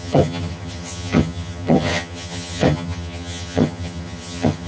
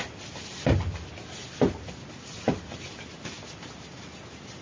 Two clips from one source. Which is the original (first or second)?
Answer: second